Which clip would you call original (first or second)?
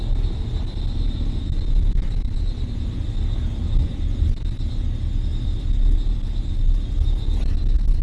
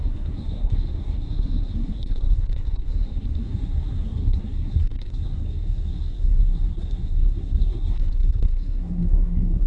first